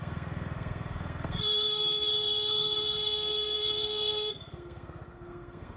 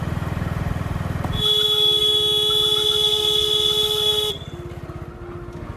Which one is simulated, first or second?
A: first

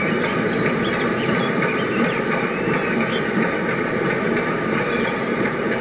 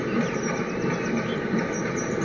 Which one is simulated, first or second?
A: first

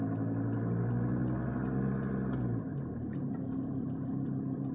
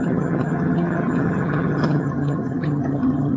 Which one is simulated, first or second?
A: second